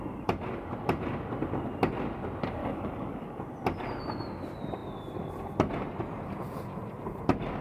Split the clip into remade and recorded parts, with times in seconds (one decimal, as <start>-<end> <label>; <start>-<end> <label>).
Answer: 0.0-2.6 recorded; 2.6-3.4 remade; 3.4-7.6 recorded